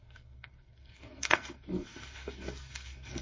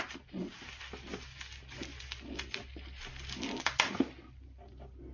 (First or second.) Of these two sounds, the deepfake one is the first